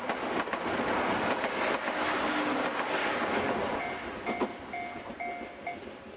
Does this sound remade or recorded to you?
recorded